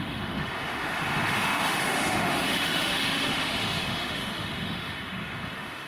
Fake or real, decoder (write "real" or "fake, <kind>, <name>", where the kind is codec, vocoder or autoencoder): fake, autoencoder, DAC-VAE